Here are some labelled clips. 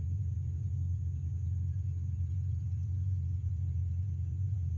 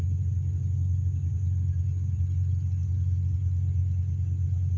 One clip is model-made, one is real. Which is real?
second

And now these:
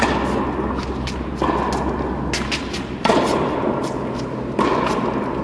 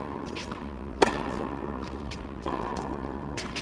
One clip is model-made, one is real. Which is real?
first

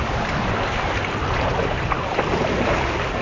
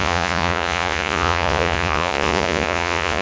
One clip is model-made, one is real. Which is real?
first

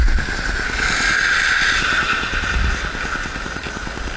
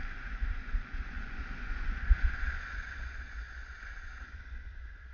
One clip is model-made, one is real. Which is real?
first